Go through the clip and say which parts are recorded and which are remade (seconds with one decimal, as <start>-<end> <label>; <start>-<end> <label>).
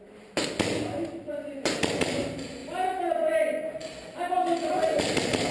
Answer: 0.0-5.5 recorded